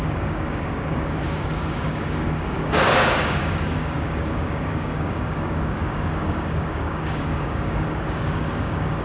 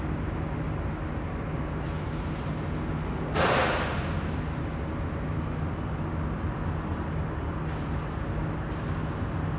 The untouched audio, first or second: second